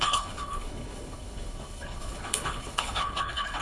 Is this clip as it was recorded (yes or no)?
no